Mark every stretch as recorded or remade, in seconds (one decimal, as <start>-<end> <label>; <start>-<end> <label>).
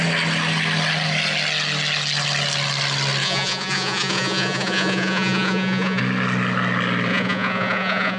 0.0-3.2 recorded; 3.2-6.0 remade; 6.0-7.1 recorded; 7.1-8.2 remade